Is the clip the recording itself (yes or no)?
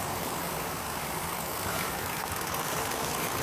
no